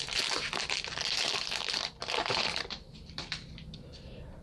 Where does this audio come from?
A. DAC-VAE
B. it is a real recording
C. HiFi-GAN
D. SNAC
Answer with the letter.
B